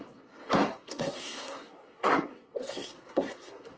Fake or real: fake